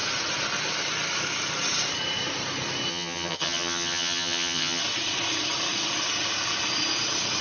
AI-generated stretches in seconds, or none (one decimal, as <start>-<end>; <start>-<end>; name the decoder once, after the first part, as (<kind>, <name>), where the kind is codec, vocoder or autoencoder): 2.9-4.8 (vocoder, HiFi-GAN)